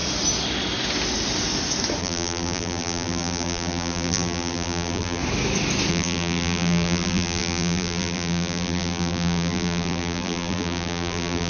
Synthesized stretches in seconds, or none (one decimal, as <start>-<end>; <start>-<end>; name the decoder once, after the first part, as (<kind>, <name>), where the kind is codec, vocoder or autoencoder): 2.0-5.2 (vocoder, BigVGAN v2); 5.9-11.5